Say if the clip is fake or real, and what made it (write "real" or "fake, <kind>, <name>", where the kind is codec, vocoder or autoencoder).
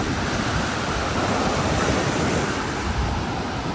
real